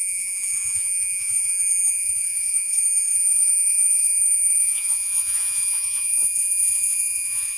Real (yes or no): no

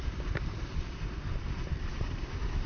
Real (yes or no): yes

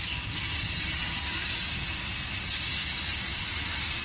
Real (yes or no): yes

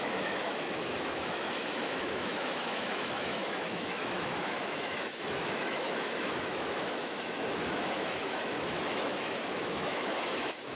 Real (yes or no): no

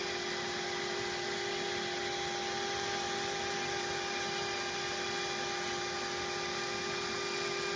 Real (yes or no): yes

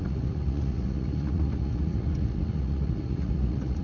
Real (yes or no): no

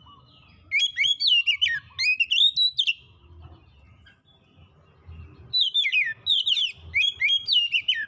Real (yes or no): yes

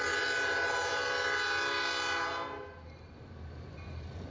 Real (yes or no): yes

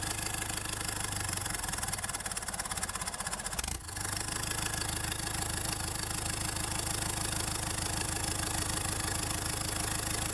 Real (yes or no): yes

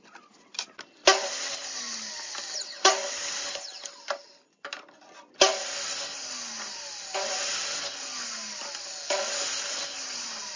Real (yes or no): yes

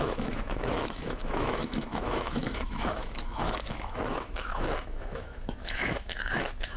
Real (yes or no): no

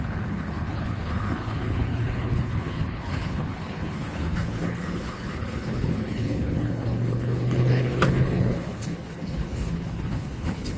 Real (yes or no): no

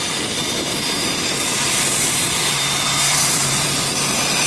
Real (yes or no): no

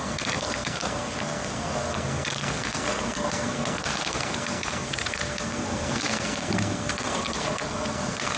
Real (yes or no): no